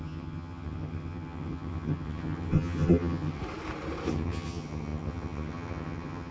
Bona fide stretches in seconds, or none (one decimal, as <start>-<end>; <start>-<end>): 3.4-4.1